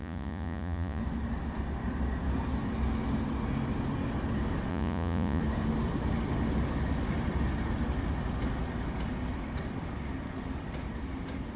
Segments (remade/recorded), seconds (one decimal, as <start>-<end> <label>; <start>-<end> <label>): 0.0-1.0 remade; 1.0-4.7 recorded; 4.7-5.4 remade; 5.4-11.6 recorded